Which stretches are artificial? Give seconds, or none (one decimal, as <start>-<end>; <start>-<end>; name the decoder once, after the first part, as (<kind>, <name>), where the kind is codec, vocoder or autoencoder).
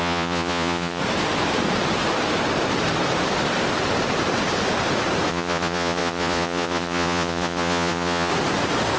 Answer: 0.0-1.0 (vocoder, Vocos); 5.3-8.3